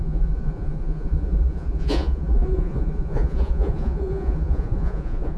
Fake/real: fake